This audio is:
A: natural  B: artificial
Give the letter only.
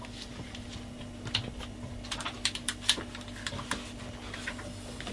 A